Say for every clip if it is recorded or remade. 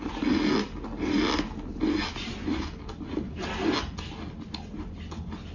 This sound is recorded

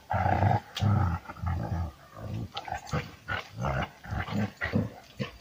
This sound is recorded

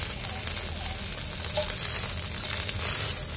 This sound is recorded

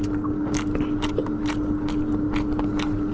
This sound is recorded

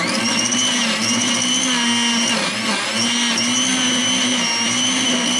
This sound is recorded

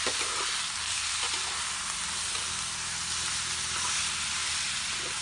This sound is recorded